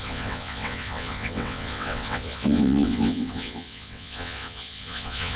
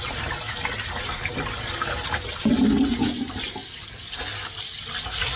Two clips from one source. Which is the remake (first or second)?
first